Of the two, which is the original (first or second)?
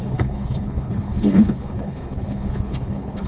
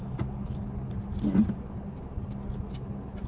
second